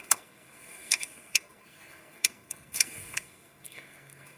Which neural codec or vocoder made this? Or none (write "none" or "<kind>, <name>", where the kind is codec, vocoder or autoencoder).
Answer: codec, SNAC